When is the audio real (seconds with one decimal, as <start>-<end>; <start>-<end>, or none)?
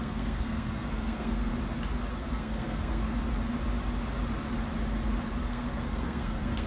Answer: 1.5-2.1; 3.0-5.4